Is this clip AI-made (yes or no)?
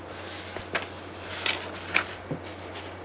no